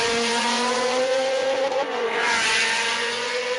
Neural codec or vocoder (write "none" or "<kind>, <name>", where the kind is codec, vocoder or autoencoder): vocoder, Vocos